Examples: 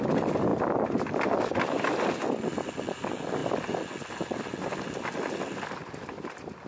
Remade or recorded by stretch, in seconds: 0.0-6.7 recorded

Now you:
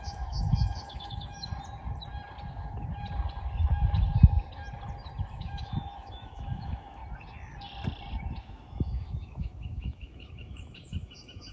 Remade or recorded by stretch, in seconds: 0.0-1.5 remade; 1.5-5.3 recorded; 5.3-7.0 remade; 7.0-8.4 recorded; 8.4-11.5 remade

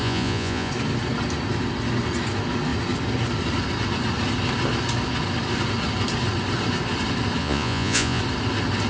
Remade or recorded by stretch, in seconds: 0.0-0.7 remade; 0.7-7.4 recorded; 7.4-8.2 remade; 8.2-8.9 recorded

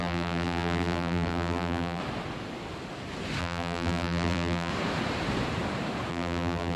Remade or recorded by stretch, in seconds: 0.0-2.0 remade; 2.0-3.4 recorded; 3.4-4.7 remade; 4.7-6.1 recorded; 6.1-6.8 remade

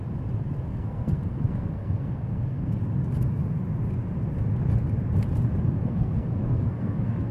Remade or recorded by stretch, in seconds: 0.0-0.7 recorded; 0.7-2.7 remade; 2.7-5.8 recorded; 5.8-7.3 remade